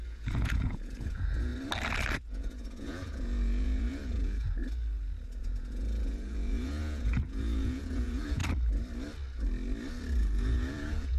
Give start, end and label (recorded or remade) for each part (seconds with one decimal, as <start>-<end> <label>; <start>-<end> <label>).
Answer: 0.0-1.5 remade; 1.5-2.3 recorded; 2.3-4.6 remade; 4.6-5.4 recorded; 5.4-8.4 remade; 8.4-10.2 recorded; 10.2-11.2 remade